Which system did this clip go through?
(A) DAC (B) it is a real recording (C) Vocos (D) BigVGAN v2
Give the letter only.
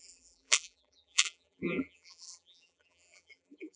D